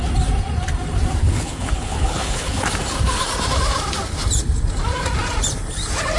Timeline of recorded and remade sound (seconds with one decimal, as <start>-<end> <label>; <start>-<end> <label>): 0.0-1.2 recorded; 1.2-2.6 remade; 2.6-6.2 recorded